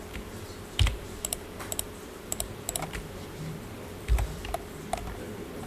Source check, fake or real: fake